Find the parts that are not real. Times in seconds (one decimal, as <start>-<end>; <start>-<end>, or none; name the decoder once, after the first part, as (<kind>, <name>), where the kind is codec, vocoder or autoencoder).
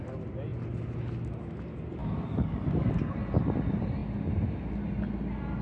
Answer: 2.0-2.9 (codec, DAC)